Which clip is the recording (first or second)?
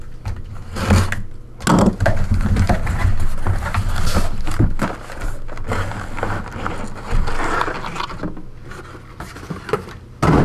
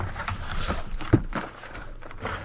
first